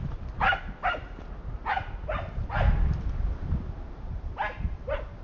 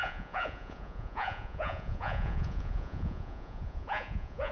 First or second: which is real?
first